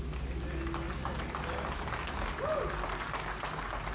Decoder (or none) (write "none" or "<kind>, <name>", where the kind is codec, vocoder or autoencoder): none